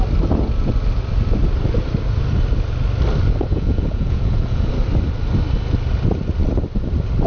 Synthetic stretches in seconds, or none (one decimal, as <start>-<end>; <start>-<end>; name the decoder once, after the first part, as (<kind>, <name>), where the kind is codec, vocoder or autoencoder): 3.5-4.7 (vocoder, Vocos)